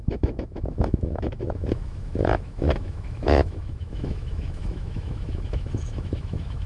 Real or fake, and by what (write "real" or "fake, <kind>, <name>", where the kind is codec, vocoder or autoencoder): fake, autoencoder, DAC-VAE